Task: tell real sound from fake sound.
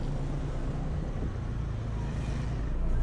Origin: real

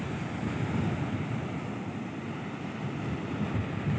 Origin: real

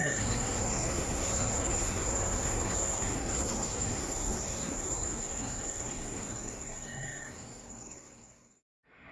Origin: fake